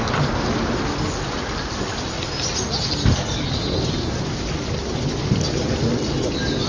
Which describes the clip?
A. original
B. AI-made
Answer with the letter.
A